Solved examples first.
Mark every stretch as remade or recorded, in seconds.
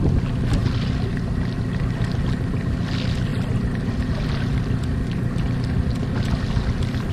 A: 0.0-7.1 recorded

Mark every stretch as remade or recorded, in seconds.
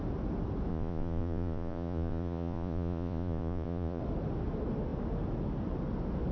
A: 0.0-0.7 recorded; 0.7-4.0 remade; 4.0-6.3 recorded